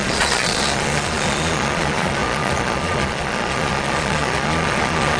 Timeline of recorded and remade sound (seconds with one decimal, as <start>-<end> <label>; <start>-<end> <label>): 0.0-5.2 remade